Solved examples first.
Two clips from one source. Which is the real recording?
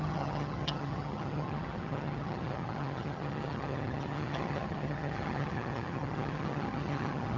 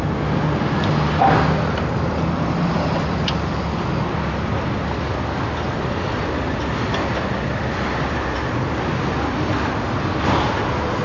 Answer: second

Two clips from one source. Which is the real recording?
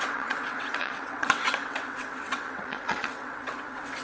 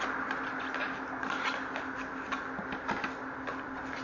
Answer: second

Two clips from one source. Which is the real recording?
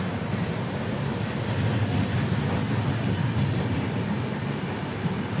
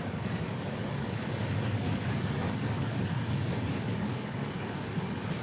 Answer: first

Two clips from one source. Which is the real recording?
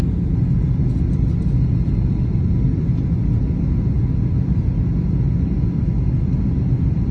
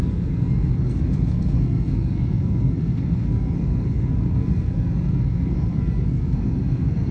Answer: first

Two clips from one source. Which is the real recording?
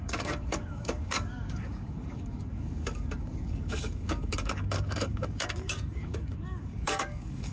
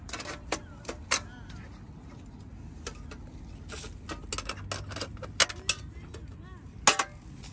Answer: second